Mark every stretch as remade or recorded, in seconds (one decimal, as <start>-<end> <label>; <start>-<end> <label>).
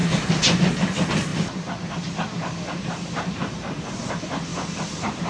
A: 0.0-0.6 remade; 0.6-1.3 recorded; 1.3-4.1 remade; 4.1-4.5 recorded; 4.5-5.3 remade